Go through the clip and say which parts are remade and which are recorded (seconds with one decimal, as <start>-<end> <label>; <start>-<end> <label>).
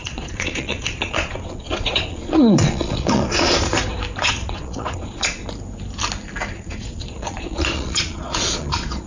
0.0-3.7 remade; 3.7-4.2 recorded; 4.2-5.4 remade; 5.4-6.5 recorded; 6.5-9.1 remade